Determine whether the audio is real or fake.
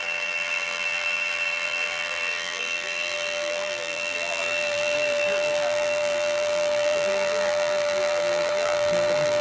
fake